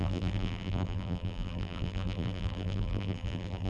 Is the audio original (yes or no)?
no